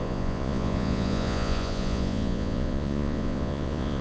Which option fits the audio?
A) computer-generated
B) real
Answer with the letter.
A